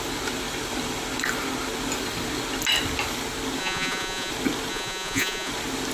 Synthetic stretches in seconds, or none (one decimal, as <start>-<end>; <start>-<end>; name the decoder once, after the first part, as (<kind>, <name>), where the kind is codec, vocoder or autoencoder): 3.6-4.3 (vocoder, Vocos); 4.7-5.5